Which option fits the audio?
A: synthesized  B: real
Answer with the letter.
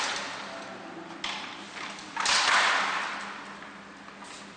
B